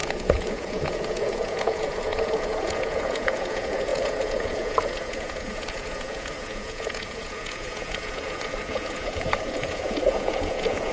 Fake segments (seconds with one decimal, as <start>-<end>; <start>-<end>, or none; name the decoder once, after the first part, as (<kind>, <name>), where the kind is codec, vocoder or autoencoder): 0.0-10.9 (vocoder, Vocos)